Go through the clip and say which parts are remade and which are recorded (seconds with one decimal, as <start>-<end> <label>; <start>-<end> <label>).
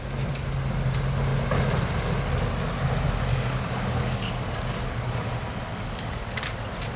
0.0-3.3 recorded; 3.3-5.3 remade; 5.3-5.7 recorded; 5.7-6.5 remade; 6.5-7.0 recorded